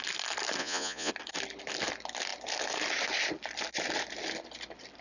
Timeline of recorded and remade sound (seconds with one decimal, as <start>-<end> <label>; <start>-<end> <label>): 0.0-0.6 recorded; 0.6-1.1 remade; 1.1-5.0 recorded